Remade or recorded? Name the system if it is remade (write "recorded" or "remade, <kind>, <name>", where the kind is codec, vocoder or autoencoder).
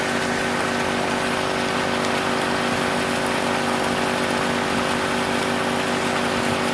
recorded